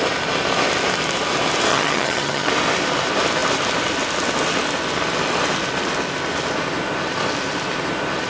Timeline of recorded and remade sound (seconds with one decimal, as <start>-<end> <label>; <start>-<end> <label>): 0.0-1.7 recorded; 1.7-2.5 remade; 2.5-8.3 recorded